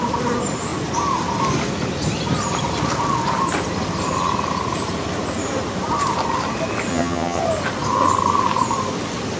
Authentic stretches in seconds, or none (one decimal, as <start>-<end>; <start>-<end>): 0.0-6.9; 7.4-9.4